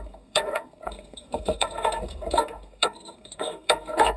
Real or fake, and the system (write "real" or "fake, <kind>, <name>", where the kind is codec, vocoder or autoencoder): fake, codec, SNAC